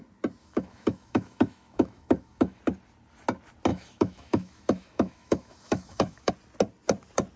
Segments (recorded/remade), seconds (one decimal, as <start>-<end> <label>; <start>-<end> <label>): 0.0-0.4 recorded; 0.4-2.6 remade; 2.6-3.7 recorded; 3.7-6.3 remade; 6.3-7.4 recorded